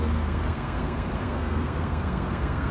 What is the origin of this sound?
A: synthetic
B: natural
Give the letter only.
A